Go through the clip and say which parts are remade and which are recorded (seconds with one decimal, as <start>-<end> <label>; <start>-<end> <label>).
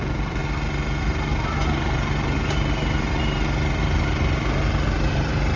0.0-0.4 remade; 0.4-1.0 recorded; 1.0-5.6 remade